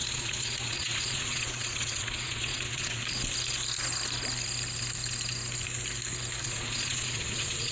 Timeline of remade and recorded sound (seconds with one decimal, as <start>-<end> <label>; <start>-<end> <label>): 0.0-3.0 remade; 3.0-6.4 recorded; 6.4-7.7 remade